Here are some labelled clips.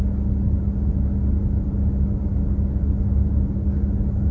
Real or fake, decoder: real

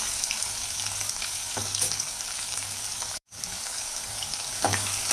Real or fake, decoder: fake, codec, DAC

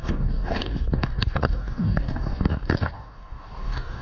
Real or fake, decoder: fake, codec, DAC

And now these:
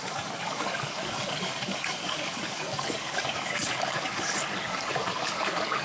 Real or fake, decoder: fake, codec, DAC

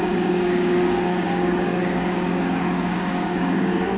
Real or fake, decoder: fake, codec, DAC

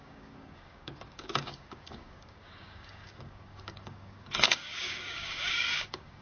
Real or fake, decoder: fake, codec, DAC